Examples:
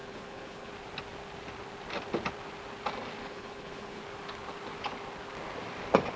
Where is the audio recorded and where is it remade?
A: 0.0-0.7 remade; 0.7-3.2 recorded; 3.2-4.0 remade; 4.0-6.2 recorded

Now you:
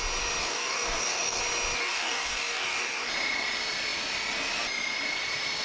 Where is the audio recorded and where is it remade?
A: 0.0-0.4 recorded; 0.4-1.4 remade; 1.4-1.8 recorded; 1.8-3.1 remade; 3.1-5.6 recorded

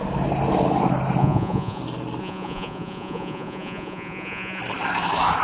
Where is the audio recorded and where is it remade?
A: 0.0-1.2 recorded; 1.2-1.8 remade; 1.8-2.2 recorded; 2.2-4.6 remade; 4.6-5.4 recorded

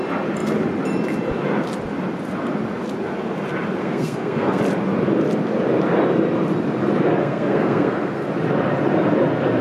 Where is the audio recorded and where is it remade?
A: 0.0-3.8 recorded; 3.8-4.6 remade; 4.6-7.2 recorded; 7.2-8.3 remade; 8.3-9.6 recorded